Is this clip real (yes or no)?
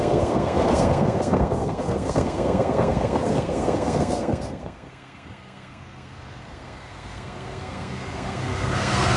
no